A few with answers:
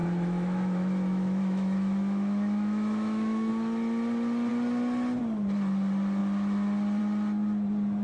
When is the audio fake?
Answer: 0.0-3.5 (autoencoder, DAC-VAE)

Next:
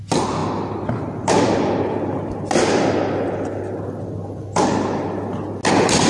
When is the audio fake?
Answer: none

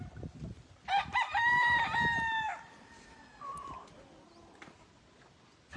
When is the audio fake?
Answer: none